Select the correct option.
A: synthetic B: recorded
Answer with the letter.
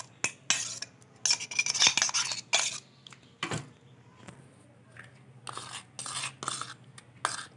B